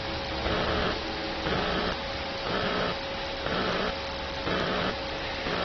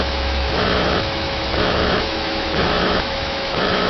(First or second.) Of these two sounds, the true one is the first